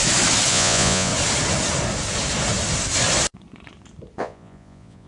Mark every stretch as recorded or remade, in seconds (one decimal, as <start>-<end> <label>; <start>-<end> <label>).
0.0-0.5 recorded; 0.5-1.1 remade; 1.1-4.2 recorded; 4.2-5.1 remade